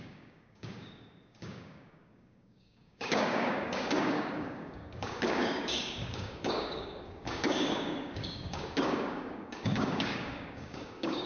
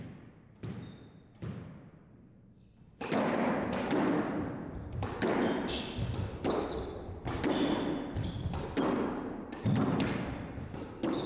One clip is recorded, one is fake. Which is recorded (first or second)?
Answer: second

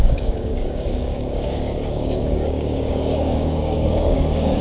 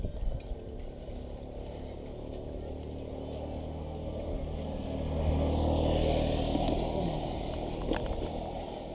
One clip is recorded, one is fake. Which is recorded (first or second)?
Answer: second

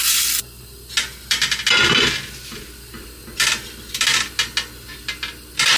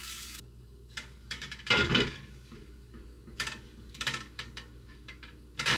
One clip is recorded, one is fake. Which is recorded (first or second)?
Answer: first